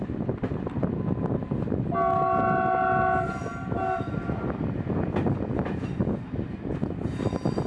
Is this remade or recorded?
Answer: recorded